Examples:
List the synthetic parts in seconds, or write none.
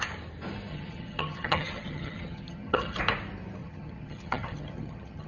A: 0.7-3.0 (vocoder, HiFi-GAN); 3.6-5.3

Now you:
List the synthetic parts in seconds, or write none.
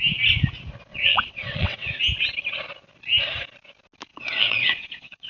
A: 0.9-2.0 (vocoder, WaveNeXt); 4.1-5.3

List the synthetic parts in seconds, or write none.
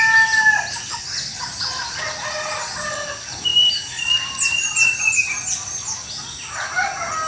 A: none